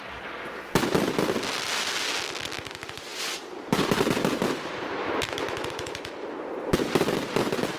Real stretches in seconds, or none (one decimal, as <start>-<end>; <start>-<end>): 0.0-7.8